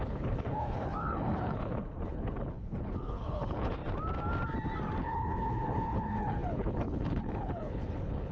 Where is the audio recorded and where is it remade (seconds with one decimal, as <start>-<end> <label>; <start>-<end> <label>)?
0.0-3.8 remade; 3.8-5.0 recorded; 5.0-8.3 remade